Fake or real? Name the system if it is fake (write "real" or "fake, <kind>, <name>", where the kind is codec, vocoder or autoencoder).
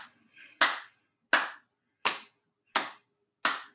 real